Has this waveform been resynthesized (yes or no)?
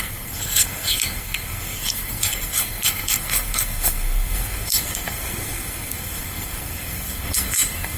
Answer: yes